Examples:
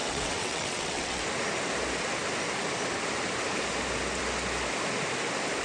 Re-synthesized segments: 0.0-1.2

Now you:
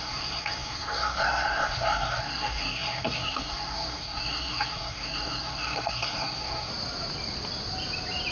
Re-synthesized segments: 0.0-6.7

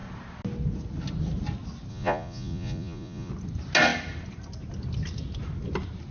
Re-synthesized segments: 1.9-3.3

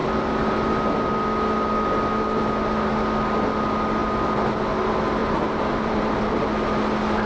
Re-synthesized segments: 5.2-6.5